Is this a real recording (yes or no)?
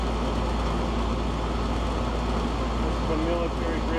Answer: yes